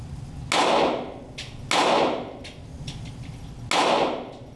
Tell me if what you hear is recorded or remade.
recorded